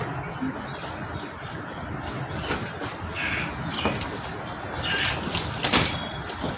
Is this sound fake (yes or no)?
no